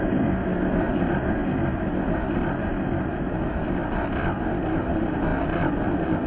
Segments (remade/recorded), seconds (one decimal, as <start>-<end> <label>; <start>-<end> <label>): 0.0-6.3 recorded